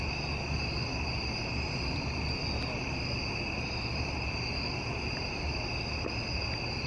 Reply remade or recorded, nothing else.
recorded